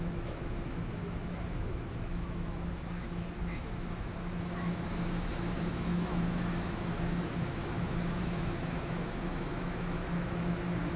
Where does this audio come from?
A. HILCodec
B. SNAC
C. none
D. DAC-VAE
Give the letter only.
D